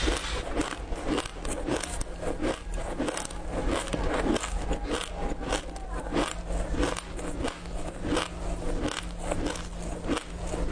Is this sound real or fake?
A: real